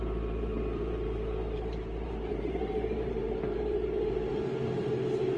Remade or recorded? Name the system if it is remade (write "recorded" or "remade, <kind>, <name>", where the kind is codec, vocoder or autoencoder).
remade, vocoder, BigVGAN v2